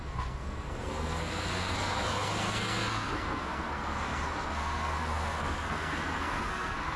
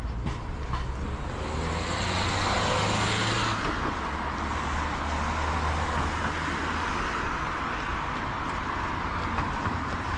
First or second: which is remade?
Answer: first